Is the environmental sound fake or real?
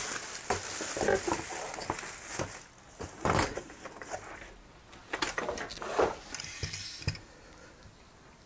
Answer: real